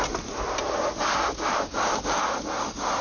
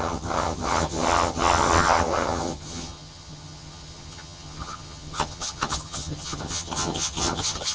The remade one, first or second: second